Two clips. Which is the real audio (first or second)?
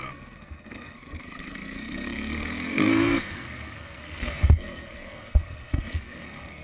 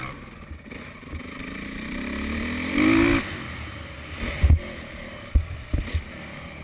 second